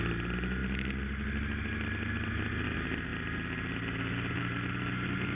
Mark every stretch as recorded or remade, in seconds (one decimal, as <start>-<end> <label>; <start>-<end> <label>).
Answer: 0.0-5.4 recorded